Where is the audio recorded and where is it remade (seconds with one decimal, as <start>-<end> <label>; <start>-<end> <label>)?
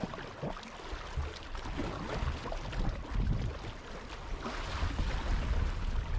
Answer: 0.0-6.2 recorded